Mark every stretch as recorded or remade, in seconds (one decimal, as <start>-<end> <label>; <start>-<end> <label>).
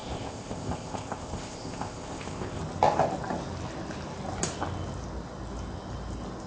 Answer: 0.0-2.6 remade; 2.6-6.5 recorded